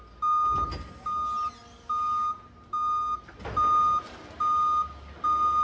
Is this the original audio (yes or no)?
yes